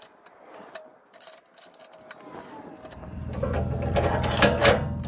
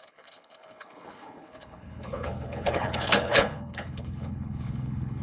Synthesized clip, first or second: second